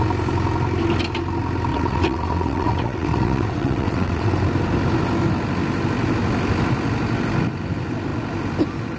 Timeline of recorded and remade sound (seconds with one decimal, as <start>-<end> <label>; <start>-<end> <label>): 0.0-1.7 recorded; 1.7-4.3 remade; 4.3-9.0 recorded